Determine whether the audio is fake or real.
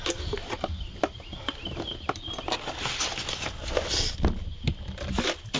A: real